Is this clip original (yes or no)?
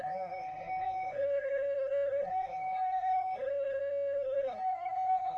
no